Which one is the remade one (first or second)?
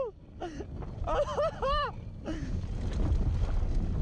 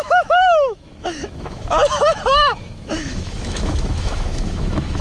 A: second